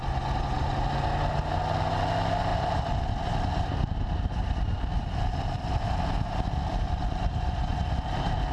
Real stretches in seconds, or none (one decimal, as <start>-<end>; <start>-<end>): 0.0-2.5; 5.9-6.7; 7.7-8.5